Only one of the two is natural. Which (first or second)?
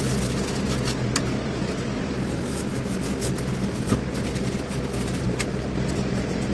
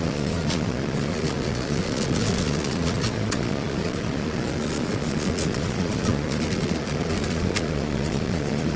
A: first